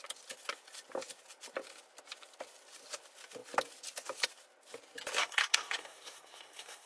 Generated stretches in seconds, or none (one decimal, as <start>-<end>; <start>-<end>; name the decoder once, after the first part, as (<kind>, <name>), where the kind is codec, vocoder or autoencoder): 5.2-6.9 (codec, SNAC)